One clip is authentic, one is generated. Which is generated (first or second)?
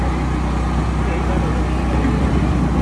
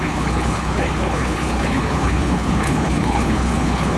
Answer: second